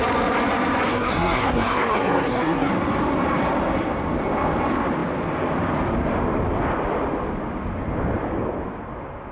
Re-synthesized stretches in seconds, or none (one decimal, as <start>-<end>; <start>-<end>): 0.9-2.7